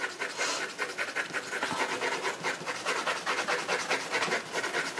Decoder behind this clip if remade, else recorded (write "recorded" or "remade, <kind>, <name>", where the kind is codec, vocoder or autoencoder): recorded